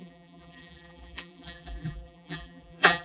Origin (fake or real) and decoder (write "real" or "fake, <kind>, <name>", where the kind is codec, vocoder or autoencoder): fake, vocoder, BigVGAN v2